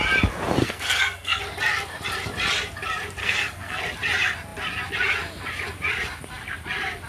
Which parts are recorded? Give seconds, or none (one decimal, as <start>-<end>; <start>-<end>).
0.0-0.6; 1.4-3.2; 3.8-7.1